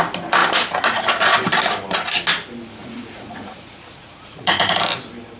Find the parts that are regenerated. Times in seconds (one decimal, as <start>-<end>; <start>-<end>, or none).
2.8-4.8